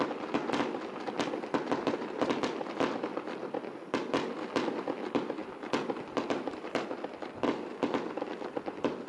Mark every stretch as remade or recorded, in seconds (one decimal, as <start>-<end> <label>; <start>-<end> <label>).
0.0-9.1 recorded